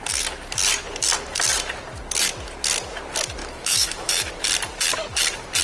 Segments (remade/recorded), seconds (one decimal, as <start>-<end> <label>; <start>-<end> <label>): 0.0-3.4 recorded; 3.4-4.3 remade; 4.3-5.6 recorded